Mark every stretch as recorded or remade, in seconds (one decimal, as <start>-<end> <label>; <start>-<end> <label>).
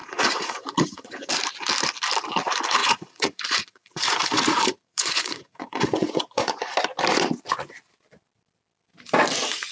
0.0-1.3 remade; 1.3-2.8 recorded; 2.8-6.5 remade; 6.5-9.7 recorded